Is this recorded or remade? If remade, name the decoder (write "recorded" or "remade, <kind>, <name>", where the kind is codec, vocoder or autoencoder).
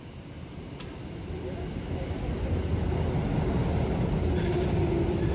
recorded